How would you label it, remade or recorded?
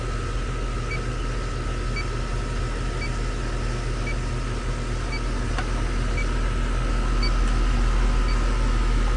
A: recorded